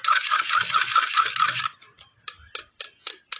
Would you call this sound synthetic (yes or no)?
no